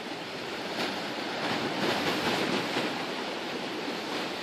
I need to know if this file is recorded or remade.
remade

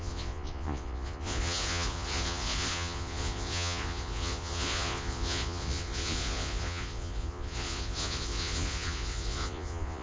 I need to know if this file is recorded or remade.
remade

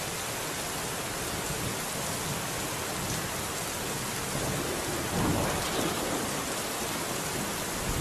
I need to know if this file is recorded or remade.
recorded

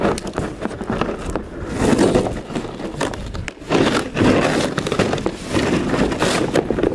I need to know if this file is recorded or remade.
recorded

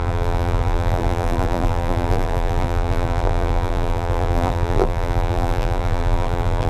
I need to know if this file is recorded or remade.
remade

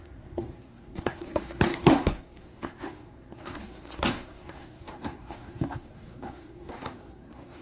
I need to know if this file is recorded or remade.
remade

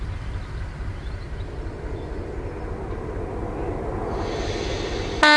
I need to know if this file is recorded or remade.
recorded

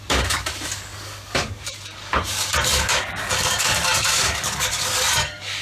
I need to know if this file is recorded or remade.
remade